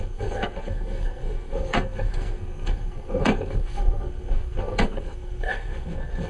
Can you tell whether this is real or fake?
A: fake